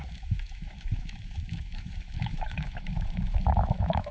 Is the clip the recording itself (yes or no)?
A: no